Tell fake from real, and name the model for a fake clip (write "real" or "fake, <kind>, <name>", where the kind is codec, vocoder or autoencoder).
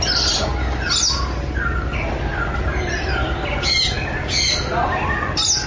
real